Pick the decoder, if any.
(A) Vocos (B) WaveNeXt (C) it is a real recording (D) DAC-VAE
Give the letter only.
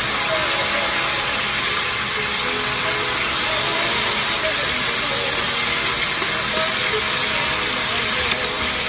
C